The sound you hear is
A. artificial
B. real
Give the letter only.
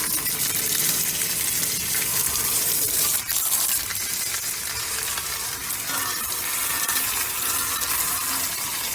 B